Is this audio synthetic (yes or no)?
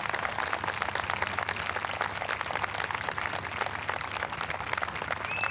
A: no